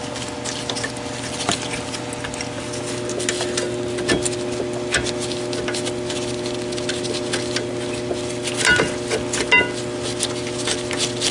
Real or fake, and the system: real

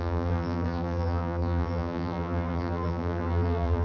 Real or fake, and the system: fake, vocoder, BigVGAN v2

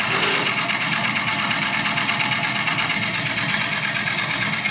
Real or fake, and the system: real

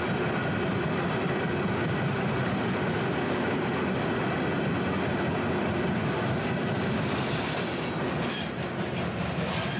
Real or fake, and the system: real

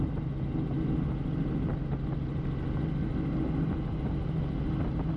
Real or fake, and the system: real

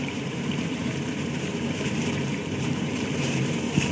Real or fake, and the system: fake, vocoder, BigVGAN v2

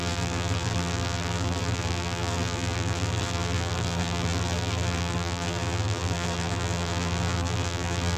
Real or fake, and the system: fake, vocoder, BigVGAN v2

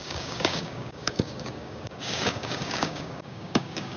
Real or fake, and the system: fake, codec, DAC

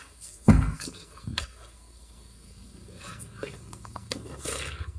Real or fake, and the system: fake, codec, SNAC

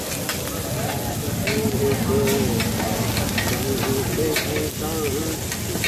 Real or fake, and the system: real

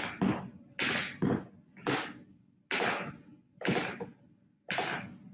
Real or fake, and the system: real